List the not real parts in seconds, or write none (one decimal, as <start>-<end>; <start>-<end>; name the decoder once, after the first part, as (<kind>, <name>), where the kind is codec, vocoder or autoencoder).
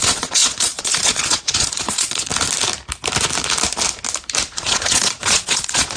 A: 0.0-2.3 (vocoder, Vocos); 4.5-6.0